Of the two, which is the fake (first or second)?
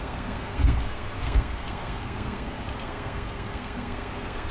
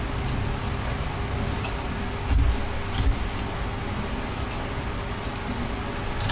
first